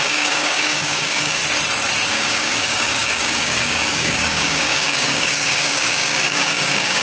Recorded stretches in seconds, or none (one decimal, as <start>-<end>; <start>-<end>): 1.4-2.1